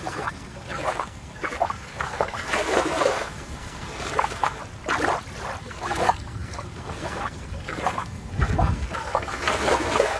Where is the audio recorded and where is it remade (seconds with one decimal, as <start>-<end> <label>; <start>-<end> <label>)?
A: 0.0-4.6 remade; 4.6-5.6 recorded; 5.6-10.2 remade